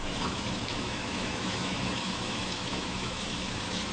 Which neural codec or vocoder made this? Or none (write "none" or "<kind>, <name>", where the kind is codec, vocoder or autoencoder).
autoencoder, DAC-VAE